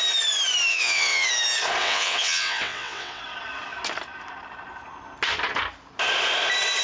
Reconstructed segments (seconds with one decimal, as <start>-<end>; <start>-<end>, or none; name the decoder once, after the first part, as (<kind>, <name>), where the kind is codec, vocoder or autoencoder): 0.7-1.3 (vocoder, WaveNeXt); 1.8-3.2